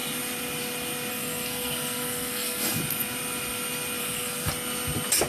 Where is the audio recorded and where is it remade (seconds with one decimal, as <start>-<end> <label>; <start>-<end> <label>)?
0.0-1.1 recorded; 1.1-2.8 remade; 2.8-4.0 recorded; 4.0-4.5 remade; 4.5-5.3 recorded